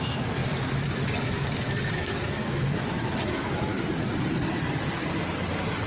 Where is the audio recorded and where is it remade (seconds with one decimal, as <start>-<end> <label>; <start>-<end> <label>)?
0.0-3.7 remade; 3.7-5.9 recorded